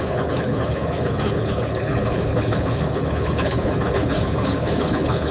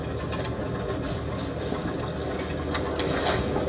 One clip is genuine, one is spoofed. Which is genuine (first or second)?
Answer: second